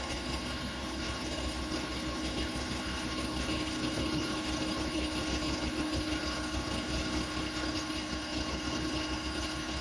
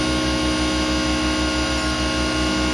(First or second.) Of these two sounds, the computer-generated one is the first